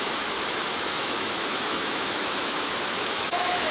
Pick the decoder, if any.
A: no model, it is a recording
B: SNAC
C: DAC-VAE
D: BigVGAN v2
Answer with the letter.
C